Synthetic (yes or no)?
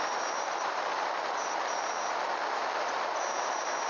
no